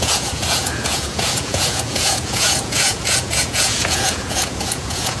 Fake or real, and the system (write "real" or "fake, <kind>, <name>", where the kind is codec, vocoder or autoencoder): fake, vocoder, Vocos